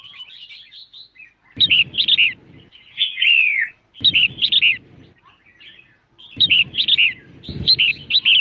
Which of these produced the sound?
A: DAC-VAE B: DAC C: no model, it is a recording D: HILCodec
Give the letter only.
C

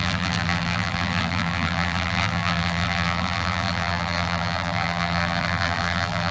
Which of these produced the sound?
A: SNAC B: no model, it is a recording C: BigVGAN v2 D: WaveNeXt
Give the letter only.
C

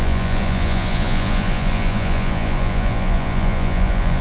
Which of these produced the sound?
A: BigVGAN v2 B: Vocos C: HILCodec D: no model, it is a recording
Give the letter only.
B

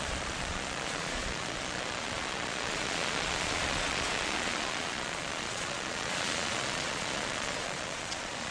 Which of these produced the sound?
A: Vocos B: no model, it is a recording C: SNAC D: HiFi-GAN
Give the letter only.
A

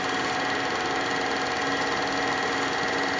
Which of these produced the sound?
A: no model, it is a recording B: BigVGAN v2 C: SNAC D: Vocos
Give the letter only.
A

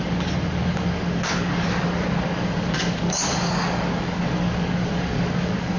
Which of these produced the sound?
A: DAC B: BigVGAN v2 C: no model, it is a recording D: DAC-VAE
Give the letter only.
A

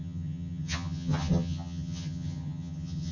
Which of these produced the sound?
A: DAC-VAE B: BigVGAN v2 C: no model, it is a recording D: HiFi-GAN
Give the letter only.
D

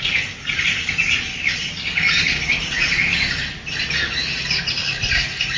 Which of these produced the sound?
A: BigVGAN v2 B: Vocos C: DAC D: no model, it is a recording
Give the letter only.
D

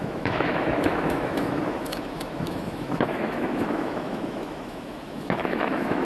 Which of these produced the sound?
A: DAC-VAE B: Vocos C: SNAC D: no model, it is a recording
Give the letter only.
A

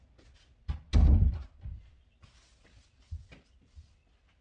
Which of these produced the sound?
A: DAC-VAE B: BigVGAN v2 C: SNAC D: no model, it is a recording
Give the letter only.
D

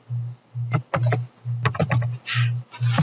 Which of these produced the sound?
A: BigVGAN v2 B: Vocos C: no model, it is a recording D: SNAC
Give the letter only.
C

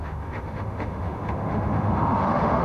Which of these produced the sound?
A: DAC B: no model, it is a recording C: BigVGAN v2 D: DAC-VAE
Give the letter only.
D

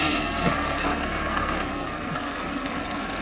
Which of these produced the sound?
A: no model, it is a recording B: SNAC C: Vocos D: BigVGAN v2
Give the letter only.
B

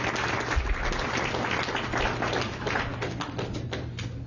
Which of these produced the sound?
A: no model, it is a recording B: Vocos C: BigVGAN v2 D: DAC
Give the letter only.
A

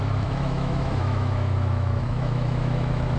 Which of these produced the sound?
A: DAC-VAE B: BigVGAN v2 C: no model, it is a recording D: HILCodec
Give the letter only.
A